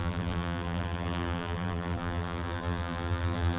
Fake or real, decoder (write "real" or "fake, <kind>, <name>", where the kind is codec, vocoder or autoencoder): fake, vocoder, BigVGAN v2